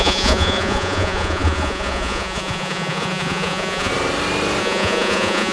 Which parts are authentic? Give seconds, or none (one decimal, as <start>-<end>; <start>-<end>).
3.9-4.6